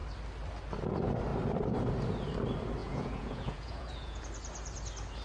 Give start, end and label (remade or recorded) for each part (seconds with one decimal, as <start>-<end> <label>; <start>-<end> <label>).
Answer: 0.0-2.8 recorded; 2.8-4.2 remade; 4.2-5.2 recorded

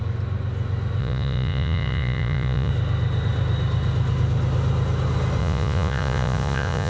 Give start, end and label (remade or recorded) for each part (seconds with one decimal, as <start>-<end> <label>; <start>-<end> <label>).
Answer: 0.0-1.0 recorded; 1.0-2.7 remade; 2.7-5.4 recorded; 5.4-6.9 remade

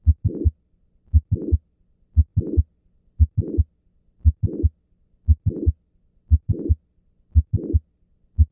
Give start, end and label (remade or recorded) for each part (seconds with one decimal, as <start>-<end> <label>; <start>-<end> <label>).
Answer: 0.0-8.5 recorded

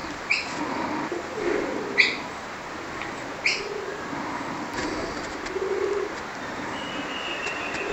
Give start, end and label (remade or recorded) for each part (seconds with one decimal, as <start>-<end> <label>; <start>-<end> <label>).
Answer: 0.0-7.9 recorded

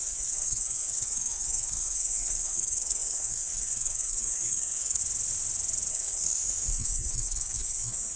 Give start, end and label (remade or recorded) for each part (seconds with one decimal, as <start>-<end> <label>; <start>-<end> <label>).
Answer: 0.0-5.0 remade; 5.0-5.9 recorded; 5.9-8.2 remade